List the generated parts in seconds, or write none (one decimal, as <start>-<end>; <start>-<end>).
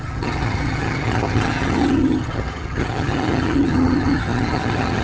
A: 0.0-5.0